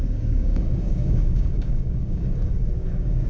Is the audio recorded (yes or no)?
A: no